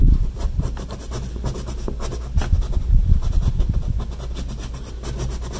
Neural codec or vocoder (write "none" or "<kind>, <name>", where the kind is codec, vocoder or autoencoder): none